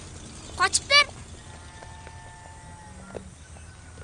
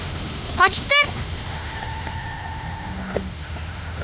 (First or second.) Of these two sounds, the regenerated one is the second